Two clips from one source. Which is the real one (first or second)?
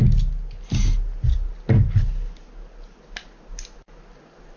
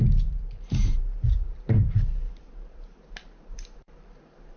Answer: first